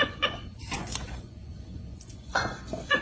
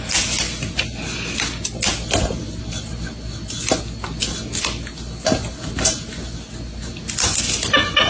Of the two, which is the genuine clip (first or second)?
second